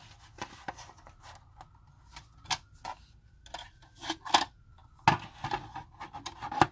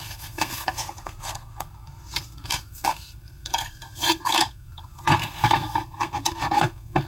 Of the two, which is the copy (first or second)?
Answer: second